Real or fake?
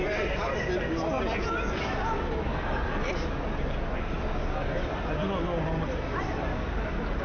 real